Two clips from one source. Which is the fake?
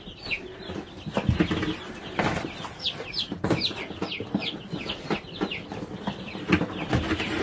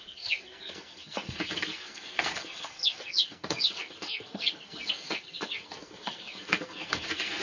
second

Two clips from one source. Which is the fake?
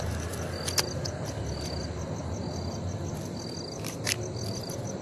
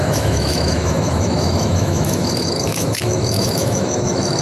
second